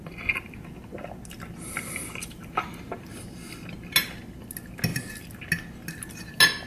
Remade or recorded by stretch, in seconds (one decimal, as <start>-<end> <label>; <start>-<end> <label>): 0.0-2.2 recorded; 2.2-3.2 remade; 3.2-6.7 recorded